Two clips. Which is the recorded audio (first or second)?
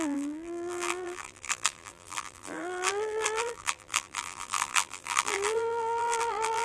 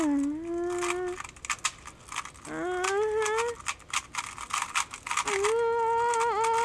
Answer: second